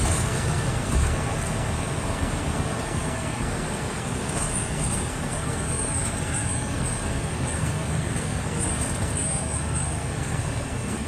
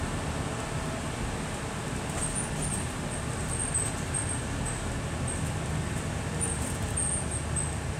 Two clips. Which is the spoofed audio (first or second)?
first